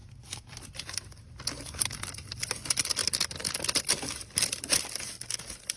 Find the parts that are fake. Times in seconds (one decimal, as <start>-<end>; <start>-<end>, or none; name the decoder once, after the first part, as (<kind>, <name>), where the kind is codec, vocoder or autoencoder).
none